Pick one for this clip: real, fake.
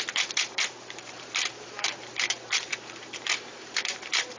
fake